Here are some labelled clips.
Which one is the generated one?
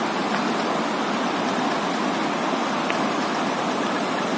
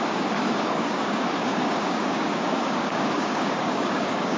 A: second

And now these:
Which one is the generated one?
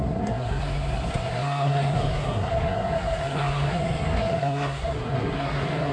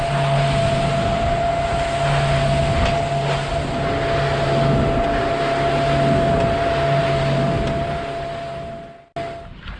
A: first